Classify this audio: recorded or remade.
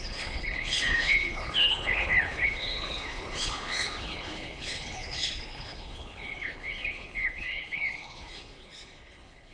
remade